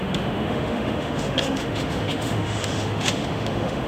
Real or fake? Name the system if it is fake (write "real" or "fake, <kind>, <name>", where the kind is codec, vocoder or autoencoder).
fake, autoencoder, DAC-VAE